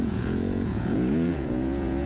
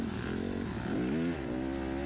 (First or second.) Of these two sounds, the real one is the second